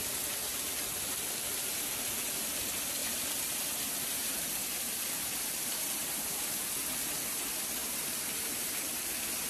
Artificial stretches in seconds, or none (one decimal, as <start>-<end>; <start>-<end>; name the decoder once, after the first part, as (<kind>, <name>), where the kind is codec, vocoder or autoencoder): 3.0-3.9 (vocoder, BigVGAN v2); 7.8-8.5